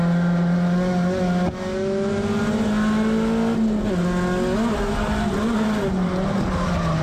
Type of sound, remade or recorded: recorded